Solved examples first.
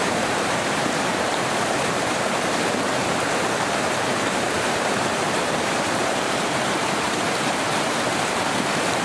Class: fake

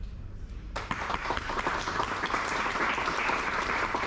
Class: fake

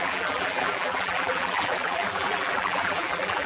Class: fake